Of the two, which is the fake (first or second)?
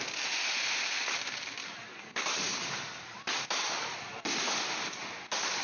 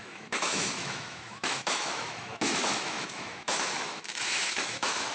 second